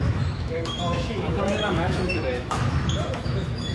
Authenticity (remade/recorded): remade